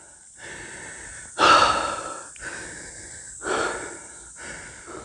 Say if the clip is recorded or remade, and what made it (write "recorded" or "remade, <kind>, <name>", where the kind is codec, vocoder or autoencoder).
recorded